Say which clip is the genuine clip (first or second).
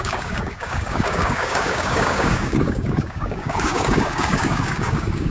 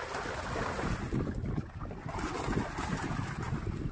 second